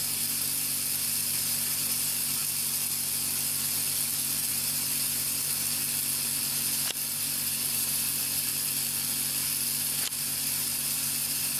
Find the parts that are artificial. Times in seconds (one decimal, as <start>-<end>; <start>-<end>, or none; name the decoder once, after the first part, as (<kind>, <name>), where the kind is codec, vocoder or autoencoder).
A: 0.0-2.4 (vocoder, BigVGAN v2); 4.5-5.8; 6.5-8.5; 9.8-11.6